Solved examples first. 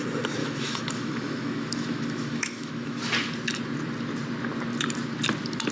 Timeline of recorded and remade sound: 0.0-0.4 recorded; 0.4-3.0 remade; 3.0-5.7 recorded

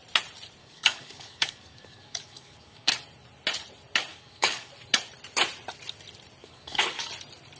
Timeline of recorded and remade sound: 0.0-0.6 recorded; 0.6-2.9 remade; 2.9-4.1 recorded; 4.1-4.7 remade; 4.7-6.4 recorded; 6.4-7.1 remade; 7.1-7.6 recorded

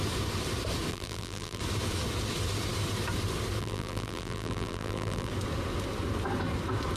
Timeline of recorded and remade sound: 0.0-0.9 recorded; 0.9-1.6 remade; 1.6-3.6 recorded; 3.6-5.3 remade; 5.3-7.0 recorded

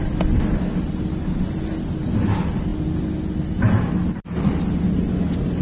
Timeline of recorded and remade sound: 0.0-5.6 recorded

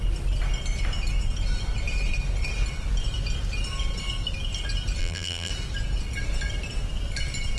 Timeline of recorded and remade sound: 0.0-5.0 recorded; 5.0-5.5 remade; 5.5-7.6 recorded

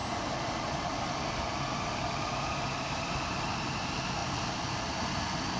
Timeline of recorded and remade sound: 0.0-5.6 recorded

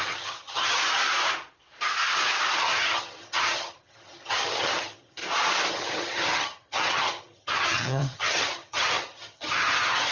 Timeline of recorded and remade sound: 0.0-0.8 remade; 0.8-2.6 recorded; 2.6-5.2 remade; 5.2-5.7 recorded; 5.7-10.1 remade

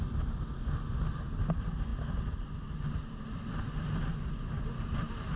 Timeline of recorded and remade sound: 0.0-5.4 recorded